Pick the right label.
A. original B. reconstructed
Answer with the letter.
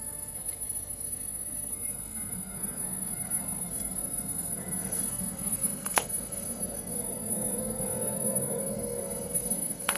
B